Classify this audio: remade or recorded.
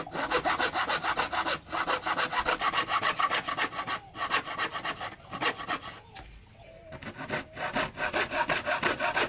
recorded